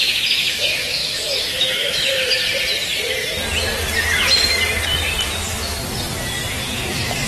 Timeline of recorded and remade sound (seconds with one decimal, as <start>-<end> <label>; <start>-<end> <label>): 0.0-2.4 remade; 2.4-5.3 recorded; 5.3-5.8 remade; 5.8-6.6 recorded; 6.6-7.3 remade